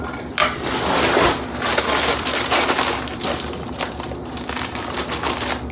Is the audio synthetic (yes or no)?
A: no